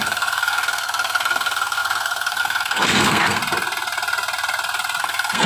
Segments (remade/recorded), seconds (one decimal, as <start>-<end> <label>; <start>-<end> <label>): 0.0-3.4 remade; 3.4-5.0 recorded; 5.0-5.5 remade